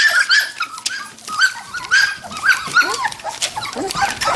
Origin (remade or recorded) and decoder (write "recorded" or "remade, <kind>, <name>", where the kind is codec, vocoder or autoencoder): remade, vocoder, BigVGAN v2